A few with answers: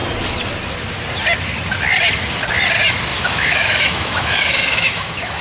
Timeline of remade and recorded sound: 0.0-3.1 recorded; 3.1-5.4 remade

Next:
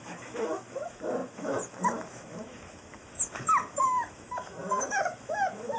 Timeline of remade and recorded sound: 0.0-5.8 remade